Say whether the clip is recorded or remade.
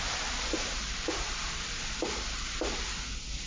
recorded